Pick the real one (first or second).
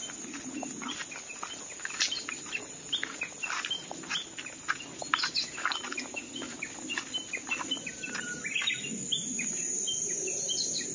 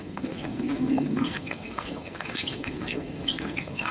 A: first